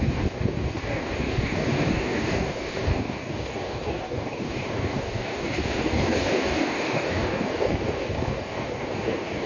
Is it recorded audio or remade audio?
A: remade